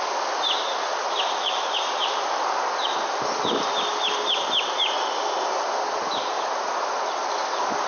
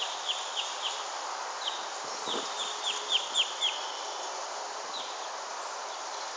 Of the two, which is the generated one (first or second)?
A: second